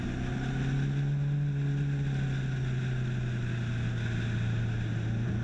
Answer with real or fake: real